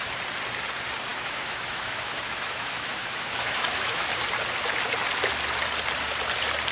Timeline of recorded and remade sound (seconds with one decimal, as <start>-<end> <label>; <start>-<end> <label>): 0.0-1.1 recorded; 1.1-4.1 remade; 4.1-6.7 recorded